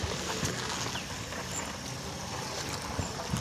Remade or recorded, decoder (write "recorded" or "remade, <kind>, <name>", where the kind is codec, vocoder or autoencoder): recorded